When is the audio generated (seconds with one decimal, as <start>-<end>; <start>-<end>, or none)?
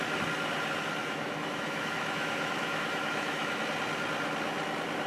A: 1.0-3.6